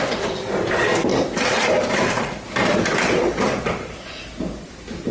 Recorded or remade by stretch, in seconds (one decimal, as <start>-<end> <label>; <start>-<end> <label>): 0.0-1.1 recorded; 1.1-4.2 remade; 4.2-5.1 recorded